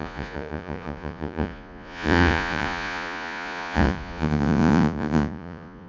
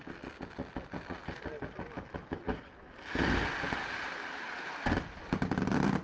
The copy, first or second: first